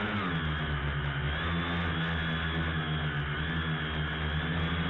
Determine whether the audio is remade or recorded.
recorded